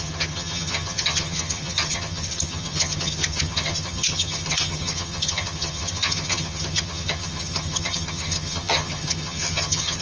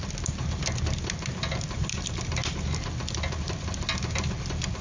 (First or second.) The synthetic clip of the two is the first